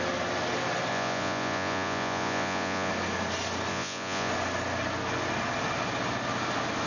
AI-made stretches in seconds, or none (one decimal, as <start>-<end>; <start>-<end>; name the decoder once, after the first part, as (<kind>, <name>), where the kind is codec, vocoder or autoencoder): 0.9-2.9 (vocoder, Vocos); 3.7-4.3